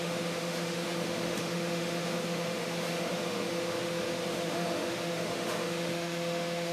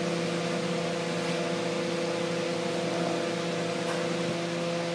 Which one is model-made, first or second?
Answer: first